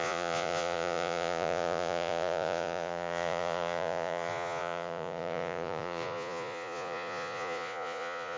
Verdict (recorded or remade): remade